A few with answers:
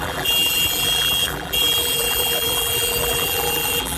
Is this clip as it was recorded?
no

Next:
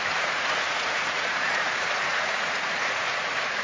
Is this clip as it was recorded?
no